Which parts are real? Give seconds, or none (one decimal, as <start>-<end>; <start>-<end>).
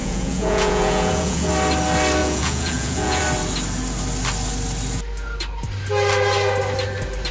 1.5-2.2; 3.2-7.3